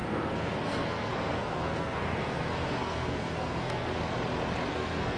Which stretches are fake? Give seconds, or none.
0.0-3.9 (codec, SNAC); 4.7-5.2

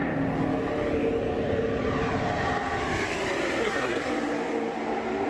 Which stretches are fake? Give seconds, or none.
3.6-4.1 (codec, SNAC)

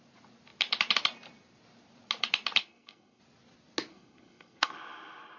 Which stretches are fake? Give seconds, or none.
2.6-3.2 (codec, SNAC); 3.9-4.7